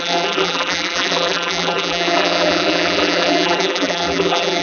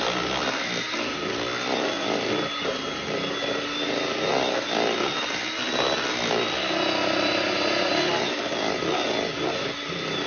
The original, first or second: second